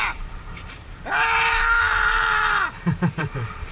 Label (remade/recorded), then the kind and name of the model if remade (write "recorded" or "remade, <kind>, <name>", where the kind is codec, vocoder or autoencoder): remade, vocoder, BigVGAN v2